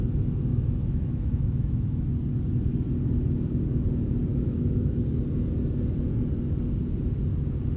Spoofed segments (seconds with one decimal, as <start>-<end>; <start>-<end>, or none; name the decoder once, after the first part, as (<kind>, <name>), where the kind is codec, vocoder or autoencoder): 0.5-2.1 (autoencoder, DAC-VAE); 4.3-5.0